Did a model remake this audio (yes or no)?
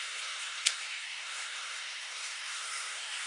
yes